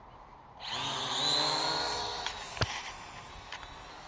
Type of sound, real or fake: real